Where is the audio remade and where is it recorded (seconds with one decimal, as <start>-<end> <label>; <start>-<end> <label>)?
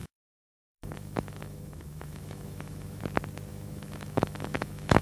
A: 0.0-3.0 remade; 3.0-3.5 recorded; 3.5-5.0 remade